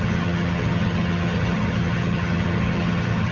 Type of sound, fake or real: fake